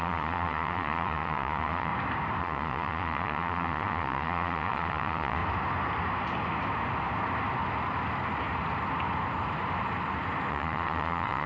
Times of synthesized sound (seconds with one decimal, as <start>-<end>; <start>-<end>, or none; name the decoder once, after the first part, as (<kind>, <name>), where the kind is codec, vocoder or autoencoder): 0.0-1.9 (vocoder, Vocos); 2.4-5.4; 10.5-11.5